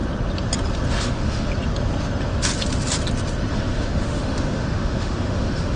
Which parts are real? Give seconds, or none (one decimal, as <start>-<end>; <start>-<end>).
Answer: 0.0-1.0; 1.5-3.5